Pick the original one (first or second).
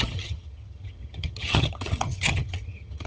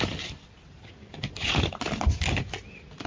second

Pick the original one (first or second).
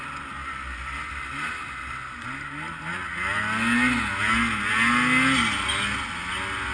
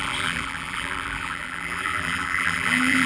first